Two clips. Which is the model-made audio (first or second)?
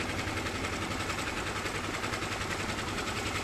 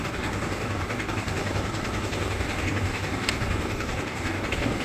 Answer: second